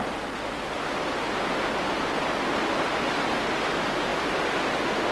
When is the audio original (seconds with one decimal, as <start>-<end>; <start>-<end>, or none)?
0.0-5.1